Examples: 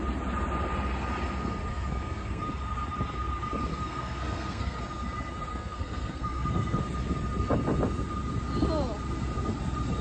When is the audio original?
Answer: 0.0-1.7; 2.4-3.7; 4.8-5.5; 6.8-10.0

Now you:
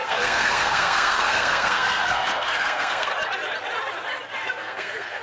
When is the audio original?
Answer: 3.1-4.4